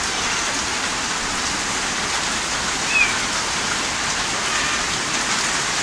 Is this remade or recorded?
recorded